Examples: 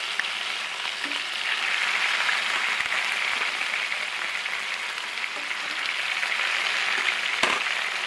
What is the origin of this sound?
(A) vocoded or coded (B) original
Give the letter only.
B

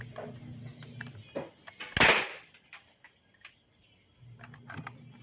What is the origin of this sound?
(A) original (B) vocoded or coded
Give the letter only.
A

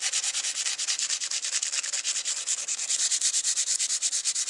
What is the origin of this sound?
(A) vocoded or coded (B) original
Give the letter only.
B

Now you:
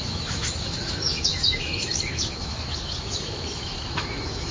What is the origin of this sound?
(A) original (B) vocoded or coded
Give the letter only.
B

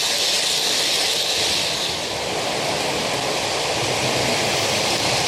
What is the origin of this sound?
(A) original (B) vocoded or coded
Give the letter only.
A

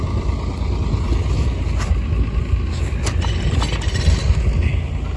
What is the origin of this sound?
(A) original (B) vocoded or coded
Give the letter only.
A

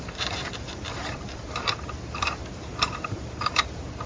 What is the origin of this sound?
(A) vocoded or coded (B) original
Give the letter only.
A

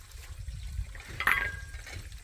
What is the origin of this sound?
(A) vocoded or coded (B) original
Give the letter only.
B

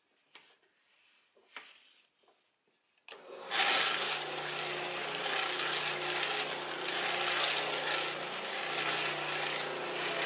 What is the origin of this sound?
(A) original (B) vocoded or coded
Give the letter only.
A